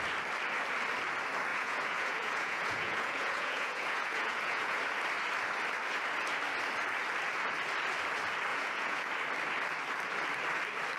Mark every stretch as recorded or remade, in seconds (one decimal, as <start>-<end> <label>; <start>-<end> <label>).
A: 0.0-1.5 recorded; 1.5-4.8 remade; 4.8-8.5 recorded; 8.5-9.1 remade; 9.1-11.0 recorded